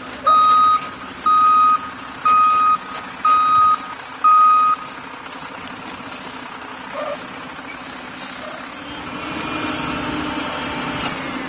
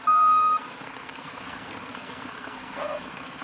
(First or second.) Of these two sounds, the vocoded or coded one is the second